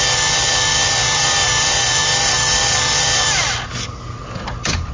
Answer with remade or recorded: recorded